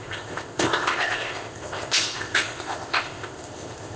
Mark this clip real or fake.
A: fake